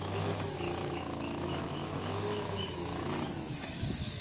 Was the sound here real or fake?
fake